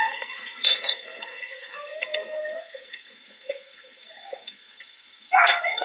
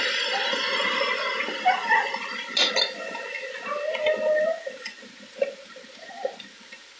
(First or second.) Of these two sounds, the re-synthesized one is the first